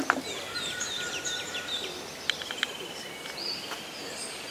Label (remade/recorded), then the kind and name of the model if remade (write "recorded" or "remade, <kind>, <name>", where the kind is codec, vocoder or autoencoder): recorded